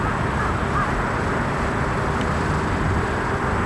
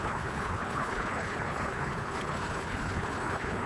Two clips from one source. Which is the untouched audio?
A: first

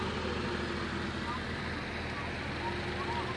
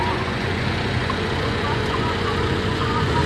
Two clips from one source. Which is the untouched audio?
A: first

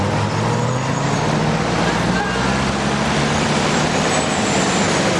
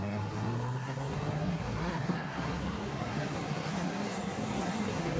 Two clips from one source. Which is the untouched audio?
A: first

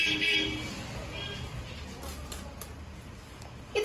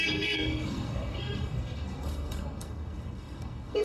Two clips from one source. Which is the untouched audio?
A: first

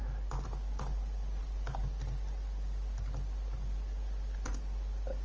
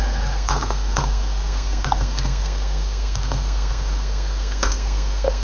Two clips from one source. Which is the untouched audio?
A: first